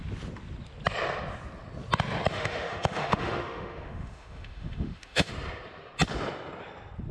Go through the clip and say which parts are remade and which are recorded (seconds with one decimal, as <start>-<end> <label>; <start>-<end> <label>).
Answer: 0.0-2.3 recorded; 2.3-5.3 remade; 5.3-7.1 recorded